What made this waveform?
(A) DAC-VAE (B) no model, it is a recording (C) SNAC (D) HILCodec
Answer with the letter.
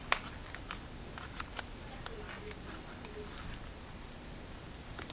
B